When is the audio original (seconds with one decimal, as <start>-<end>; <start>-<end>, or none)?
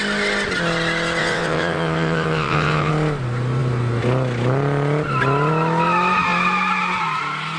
0.0-1.2; 2.9-7.6